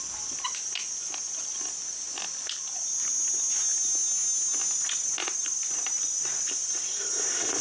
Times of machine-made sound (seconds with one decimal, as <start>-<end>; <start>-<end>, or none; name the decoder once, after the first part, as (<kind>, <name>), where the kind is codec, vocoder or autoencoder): 6.6-7.1 (vocoder, Vocos)